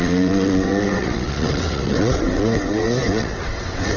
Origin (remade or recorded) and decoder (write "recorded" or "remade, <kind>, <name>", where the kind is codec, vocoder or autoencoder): remade, vocoder, WaveNeXt